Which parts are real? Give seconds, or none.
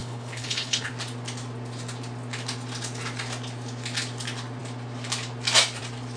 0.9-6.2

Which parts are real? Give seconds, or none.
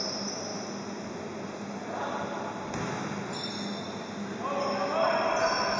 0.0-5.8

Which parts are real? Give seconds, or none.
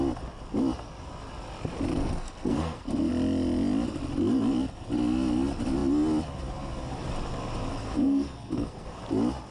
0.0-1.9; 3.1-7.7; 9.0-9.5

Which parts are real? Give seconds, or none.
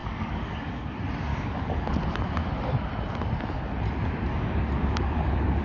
0.9-1.3; 1.9-4.3